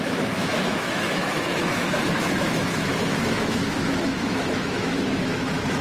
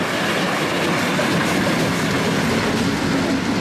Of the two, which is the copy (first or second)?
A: first